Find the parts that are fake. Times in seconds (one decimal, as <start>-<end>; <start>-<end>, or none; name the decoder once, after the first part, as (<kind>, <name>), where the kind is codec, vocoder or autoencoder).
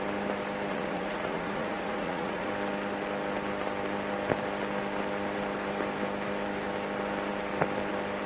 0.7-2.5 (vocoder, Vocos)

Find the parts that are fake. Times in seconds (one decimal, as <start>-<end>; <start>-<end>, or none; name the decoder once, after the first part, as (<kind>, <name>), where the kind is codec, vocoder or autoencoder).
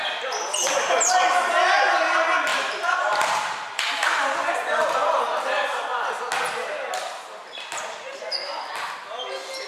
2.5-5.2 (vocoder, BigVGAN v2)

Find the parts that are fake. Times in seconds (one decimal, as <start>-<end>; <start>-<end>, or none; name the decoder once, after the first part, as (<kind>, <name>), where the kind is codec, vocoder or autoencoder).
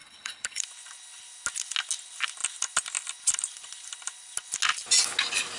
0.0-0.6 (codec, HILCodec)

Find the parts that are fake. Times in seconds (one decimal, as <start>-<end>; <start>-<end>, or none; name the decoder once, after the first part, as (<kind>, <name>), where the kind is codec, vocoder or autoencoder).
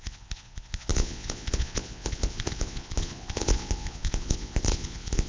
0.0-5.3 (vocoder, Vocos)